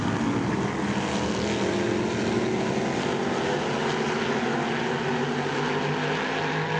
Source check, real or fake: real